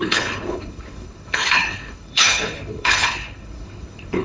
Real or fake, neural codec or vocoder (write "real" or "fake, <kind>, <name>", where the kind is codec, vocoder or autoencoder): fake, codec, HILCodec